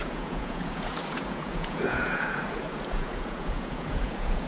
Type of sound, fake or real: fake